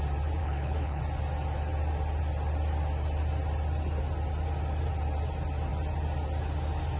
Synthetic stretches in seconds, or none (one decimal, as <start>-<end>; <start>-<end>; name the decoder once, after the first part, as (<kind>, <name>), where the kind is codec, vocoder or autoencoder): 0.4-1.0 (codec, HILCodec)